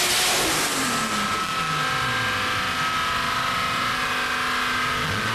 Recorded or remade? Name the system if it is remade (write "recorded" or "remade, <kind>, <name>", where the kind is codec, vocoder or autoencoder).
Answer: recorded